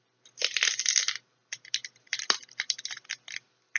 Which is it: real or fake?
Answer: fake